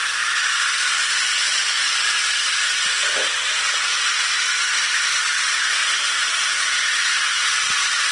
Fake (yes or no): no